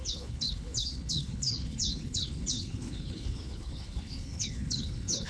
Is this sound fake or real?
fake